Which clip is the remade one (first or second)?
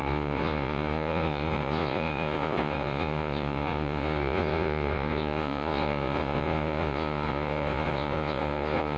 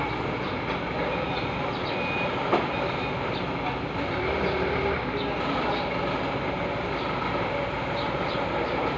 first